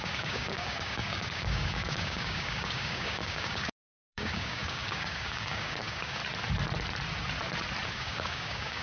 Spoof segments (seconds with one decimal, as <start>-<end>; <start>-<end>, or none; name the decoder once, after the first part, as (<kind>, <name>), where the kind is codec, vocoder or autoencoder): 0.0-6.2 (codec, DAC); 7.9-8.8